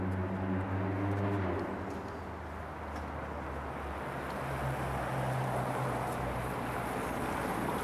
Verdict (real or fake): real